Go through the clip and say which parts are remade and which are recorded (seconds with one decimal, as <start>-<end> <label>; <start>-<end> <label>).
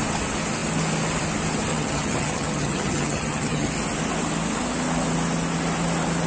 0.0-1.7 recorded; 1.7-3.7 remade; 3.7-6.3 recorded